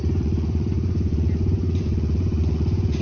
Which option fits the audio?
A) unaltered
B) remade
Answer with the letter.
B